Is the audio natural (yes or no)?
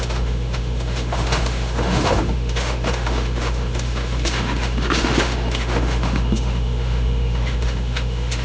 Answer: no